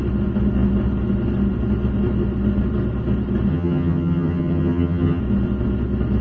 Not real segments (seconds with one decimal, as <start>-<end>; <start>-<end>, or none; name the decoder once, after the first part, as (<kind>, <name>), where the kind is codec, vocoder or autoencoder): 3.5-5.2 (vocoder, HiFi-GAN)